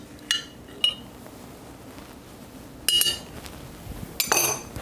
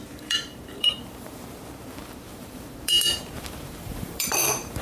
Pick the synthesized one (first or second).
second